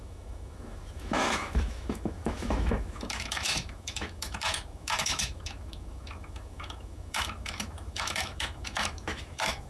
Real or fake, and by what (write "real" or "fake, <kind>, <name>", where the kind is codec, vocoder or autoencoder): fake, autoencoder, DAC-VAE